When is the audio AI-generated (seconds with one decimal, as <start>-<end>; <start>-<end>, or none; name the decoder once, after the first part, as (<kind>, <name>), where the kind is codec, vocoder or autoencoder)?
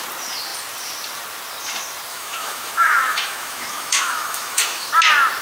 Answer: 2.1-4.9 (autoencoder, DAC-VAE)